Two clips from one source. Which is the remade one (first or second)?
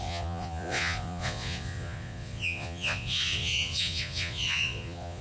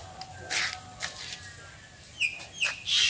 first